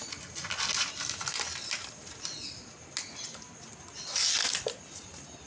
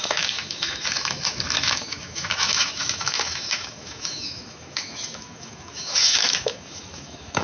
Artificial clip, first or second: second